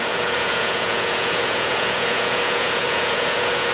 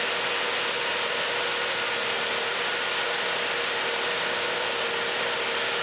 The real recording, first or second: second